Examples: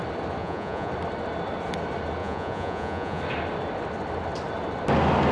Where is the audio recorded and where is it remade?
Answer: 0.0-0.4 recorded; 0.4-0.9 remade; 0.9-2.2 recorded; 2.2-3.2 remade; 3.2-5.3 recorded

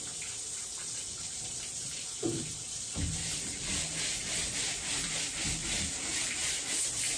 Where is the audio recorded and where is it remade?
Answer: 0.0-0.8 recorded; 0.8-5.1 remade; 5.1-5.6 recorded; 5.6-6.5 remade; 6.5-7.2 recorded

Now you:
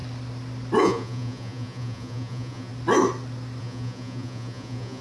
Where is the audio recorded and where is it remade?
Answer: 0.0-0.8 recorded; 0.8-2.7 remade; 2.7-3.6 recorded; 3.6-5.0 remade

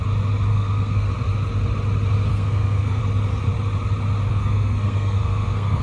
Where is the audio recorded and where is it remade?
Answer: 0.0-0.5 recorded; 0.5-1.1 remade; 1.1-2.3 recorded; 2.3-3.0 remade; 3.0-4.3 recorded; 4.3-5.8 remade